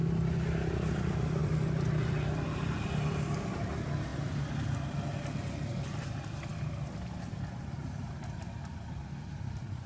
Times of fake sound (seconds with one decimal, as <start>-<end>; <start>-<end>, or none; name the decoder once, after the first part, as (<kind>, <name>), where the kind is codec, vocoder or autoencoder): 0.9-4.1 (vocoder, BigVGAN v2); 5.8-9.9